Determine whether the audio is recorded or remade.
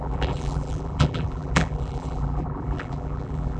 remade